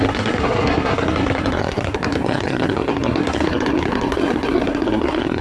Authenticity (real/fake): fake